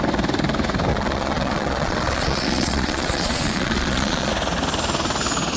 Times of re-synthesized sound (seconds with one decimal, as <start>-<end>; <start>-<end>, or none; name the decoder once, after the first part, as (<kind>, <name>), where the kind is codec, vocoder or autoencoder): 0.9-4.3 (vocoder, Vocos)